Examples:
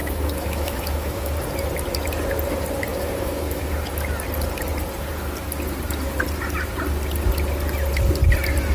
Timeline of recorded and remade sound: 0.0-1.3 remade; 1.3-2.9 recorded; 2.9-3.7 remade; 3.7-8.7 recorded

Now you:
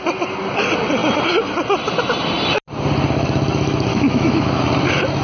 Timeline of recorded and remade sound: 0.0-3.9 recorded; 3.9-4.6 remade; 4.6-5.2 recorded

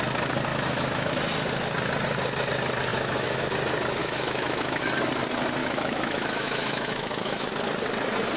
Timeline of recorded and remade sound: 0.0-0.5 recorded; 0.5-1.1 remade; 1.1-2.9 recorded; 2.9-3.4 remade; 3.4-4.0 recorded; 4.0-4.8 remade; 4.8-5.6 recorded; 5.6-7.5 remade; 7.5-8.4 recorded

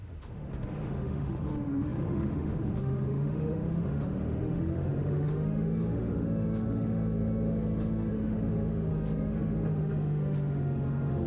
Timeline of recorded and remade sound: 0.0-11.3 remade

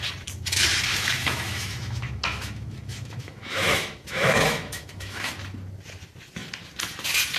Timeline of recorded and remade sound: 0.0-0.9 recorded; 0.9-5.3 remade; 5.3-7.4 recorded

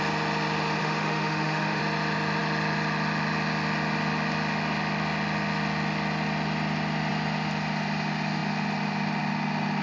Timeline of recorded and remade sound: 0.0-0.8 recorded; 0.8-1.8 remade; 1.8-9.8 recorded

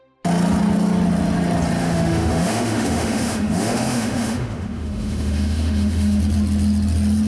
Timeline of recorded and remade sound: 0.0-1.8 recorded; 1.8-6.2 remade; 6.2-7.3 recorded

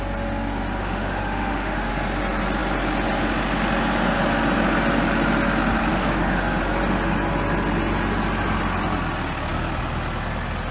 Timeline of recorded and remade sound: 0.0-0.8 recorded; 0.8-1.9 remade; 1.9-5.9 recorded; 5.9-6.6 remade; 6.6-10.7 recorded